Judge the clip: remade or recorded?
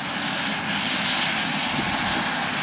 recorded